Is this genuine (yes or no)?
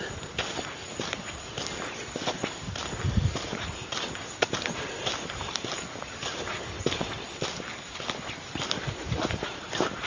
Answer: yes